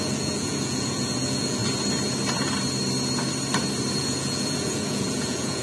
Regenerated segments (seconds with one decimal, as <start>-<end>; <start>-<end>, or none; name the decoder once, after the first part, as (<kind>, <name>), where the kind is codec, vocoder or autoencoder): 0.0-1.6 (vocoder, Vocos); 3.9-5.6